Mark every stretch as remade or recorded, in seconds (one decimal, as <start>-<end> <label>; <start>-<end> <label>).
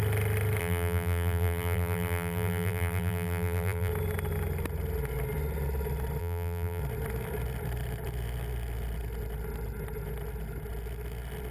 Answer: 0.0-0.6 recorded; 0.6-3.9 remade; 3.9-6.2 recorded; 6.2-6.8 remade; 6.8-11.5 recorded